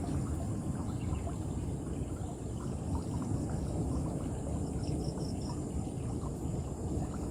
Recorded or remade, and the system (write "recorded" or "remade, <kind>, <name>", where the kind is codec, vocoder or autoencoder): recorded